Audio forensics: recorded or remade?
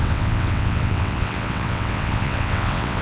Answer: remade